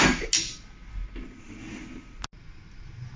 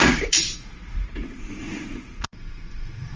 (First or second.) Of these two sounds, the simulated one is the second